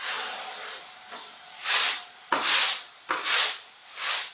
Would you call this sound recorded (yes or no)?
yes